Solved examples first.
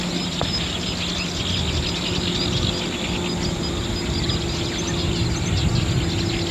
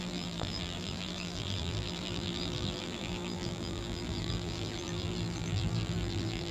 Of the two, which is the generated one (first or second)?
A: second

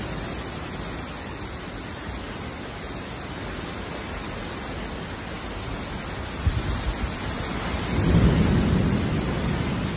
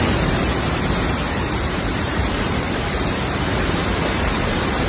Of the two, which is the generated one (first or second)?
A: second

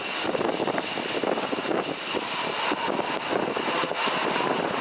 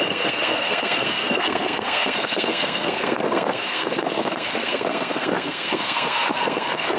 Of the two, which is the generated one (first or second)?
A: second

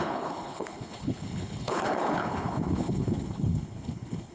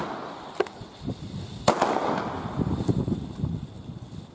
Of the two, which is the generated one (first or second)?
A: first